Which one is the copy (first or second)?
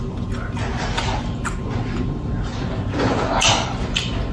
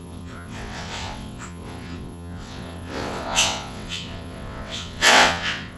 second